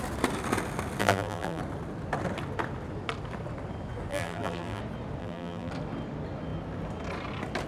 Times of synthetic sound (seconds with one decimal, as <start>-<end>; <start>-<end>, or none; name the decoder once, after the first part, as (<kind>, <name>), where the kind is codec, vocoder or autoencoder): 1.0-1.6 (vocoder, BigVGAN v2); 4.1-4.8; 5.2-5.7